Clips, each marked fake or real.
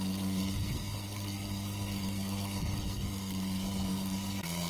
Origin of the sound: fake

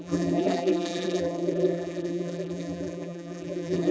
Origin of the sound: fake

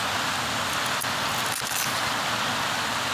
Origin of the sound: real